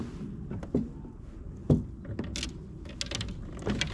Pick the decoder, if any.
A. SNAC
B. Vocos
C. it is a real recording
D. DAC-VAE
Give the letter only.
C